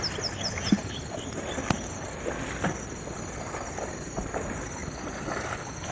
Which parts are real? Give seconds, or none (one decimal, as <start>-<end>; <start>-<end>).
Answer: 0.0-0.8; 3.8-5.9